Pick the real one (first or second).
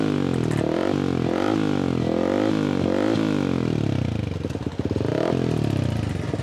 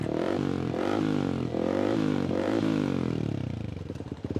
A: first